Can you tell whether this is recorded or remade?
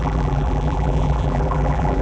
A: remade